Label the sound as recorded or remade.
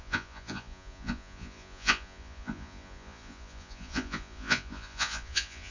remade